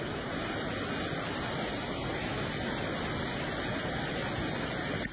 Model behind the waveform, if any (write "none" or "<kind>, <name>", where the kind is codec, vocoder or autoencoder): none